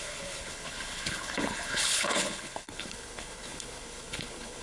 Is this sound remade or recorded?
remade